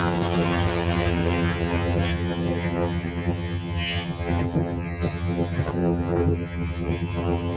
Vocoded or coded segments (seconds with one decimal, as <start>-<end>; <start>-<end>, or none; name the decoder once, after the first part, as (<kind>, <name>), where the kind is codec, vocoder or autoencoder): 0.0-7.6 (vocoder, HiFi-GAN)